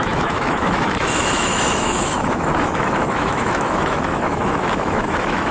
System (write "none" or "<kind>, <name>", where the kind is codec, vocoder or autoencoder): autoencoder, DAC-VAE